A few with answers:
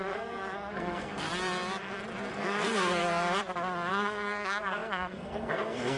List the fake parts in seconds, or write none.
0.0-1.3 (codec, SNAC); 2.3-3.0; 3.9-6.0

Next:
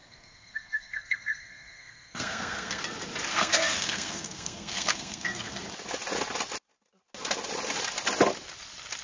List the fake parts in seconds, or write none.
0.0-2.8 (codec, SNAC); 3.3-5.6

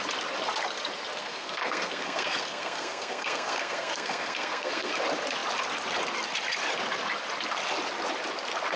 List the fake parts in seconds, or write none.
1.2-4.9 (codec, SNAC)

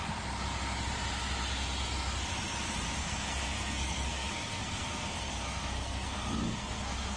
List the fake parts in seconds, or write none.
3.0-7.2 (codec, SNAC)